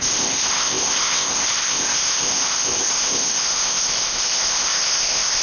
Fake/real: fake